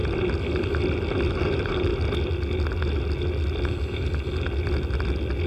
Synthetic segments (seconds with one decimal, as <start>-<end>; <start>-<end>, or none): 1.3-1.9